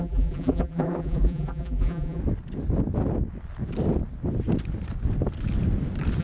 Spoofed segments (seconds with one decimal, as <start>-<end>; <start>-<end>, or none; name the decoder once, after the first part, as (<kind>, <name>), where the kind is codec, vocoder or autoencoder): 0.0-2.2 (vocoder, BigVGAN v2)